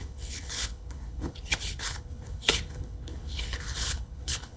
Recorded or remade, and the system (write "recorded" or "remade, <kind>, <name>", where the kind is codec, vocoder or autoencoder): remade, codec, HILCodec